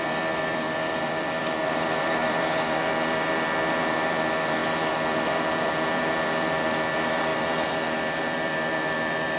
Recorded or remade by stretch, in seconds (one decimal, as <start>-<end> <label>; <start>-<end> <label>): 0.0-9.4 remade

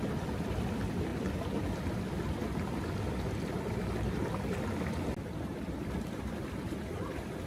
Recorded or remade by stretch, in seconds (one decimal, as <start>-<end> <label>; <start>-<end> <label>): 0.0-7.5 remade

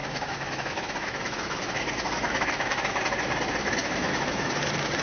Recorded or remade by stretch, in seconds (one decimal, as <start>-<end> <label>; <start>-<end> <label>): 0.0-3.0 remade; 3.0-3.8 recorded; 3.8-4.5 remade; 4.5-5.0 recorded

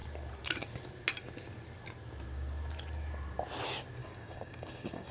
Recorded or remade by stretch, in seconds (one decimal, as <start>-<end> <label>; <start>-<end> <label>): 0.0-4.0 recorded; 4.0-5.1 remade